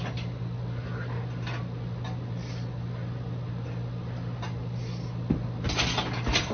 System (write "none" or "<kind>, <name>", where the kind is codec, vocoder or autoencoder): none